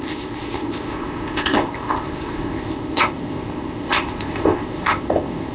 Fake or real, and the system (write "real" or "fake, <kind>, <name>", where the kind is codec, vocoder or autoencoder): fake, codec, ZipCodec